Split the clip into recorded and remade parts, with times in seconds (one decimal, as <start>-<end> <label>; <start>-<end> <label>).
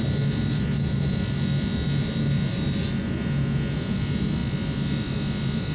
0.0-5.7 recorded